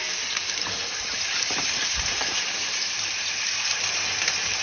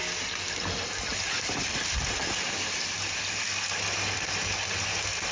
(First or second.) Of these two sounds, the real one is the second